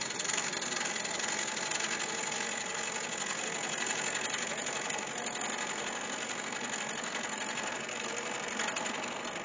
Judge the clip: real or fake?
real